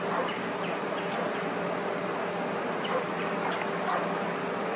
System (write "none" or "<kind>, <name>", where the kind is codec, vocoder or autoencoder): none